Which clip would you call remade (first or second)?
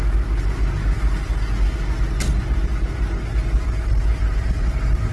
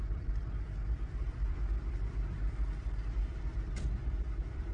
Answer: second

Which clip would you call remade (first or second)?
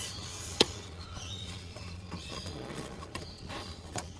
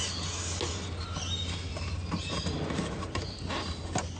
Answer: first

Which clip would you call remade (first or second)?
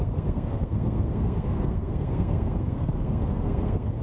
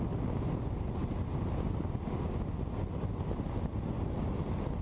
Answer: first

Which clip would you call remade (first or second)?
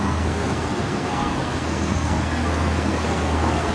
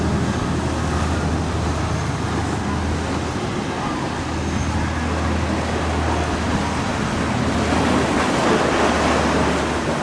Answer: first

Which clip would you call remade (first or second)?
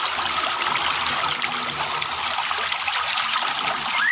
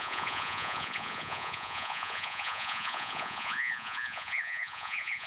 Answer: second